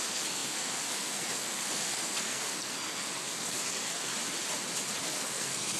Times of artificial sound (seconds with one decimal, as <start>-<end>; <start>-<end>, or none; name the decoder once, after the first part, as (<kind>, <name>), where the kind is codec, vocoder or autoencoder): 0.0-4.1 (codec, SNAC); 5.0-5.8